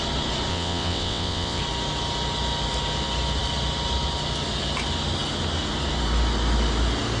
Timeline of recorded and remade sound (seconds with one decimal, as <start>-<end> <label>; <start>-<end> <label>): 0.0-0.5 recorded; 0.5-1.6 remade; 1.6-7.2 recorded